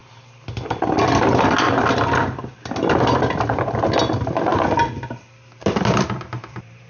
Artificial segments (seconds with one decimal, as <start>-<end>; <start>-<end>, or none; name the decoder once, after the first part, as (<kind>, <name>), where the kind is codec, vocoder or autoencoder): none